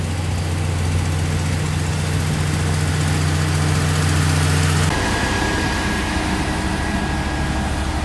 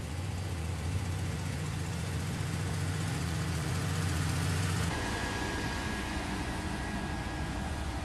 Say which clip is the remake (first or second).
second